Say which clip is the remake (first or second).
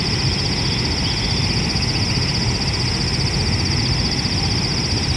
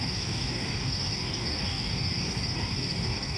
second